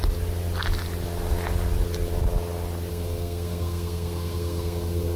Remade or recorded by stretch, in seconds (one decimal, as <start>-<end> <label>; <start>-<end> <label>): 0.0-2.9 recorded; 2.9-5.2 remade